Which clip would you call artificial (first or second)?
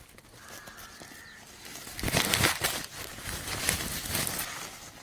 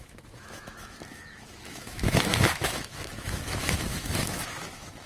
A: second